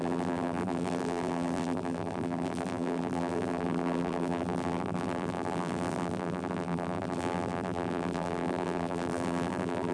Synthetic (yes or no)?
yes